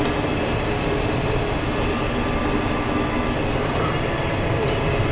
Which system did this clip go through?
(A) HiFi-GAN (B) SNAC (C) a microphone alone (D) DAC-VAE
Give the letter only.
C